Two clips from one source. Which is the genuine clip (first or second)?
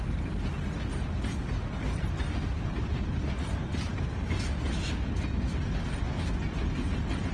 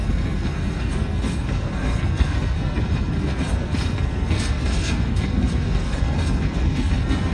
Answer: first